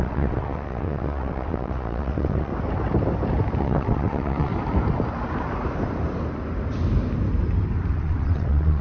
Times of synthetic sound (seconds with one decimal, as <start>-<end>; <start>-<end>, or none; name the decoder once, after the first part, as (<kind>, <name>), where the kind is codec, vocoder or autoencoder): 0.0-2.5 (vocoder, WaveNeXt); 3.6-4.5; 7.9-8.8